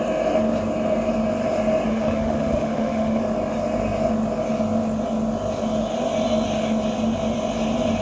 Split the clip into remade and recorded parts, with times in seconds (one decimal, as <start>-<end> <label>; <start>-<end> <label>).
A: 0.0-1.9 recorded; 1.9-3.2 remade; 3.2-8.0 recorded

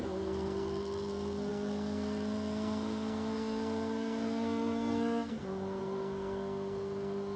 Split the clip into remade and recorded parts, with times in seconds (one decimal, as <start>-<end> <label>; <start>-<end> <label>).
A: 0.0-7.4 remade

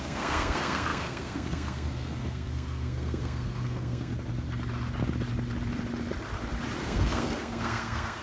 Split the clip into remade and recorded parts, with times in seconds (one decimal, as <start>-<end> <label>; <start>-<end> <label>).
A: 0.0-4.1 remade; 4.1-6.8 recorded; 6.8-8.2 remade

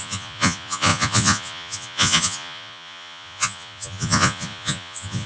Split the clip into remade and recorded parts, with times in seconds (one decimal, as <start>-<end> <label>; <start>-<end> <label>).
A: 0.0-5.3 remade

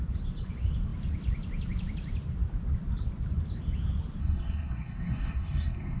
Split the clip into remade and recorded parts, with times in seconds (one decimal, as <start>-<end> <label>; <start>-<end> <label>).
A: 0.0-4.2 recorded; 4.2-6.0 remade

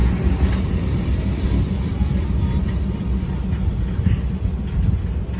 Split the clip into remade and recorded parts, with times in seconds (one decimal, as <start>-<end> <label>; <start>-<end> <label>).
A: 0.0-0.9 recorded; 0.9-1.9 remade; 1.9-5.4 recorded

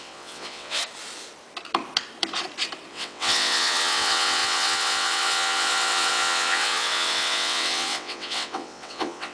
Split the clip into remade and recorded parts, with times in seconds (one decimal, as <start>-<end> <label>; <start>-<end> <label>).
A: 0.0-0.8 remade; 0.8-2.9 recorded; 2.9-9.3 remade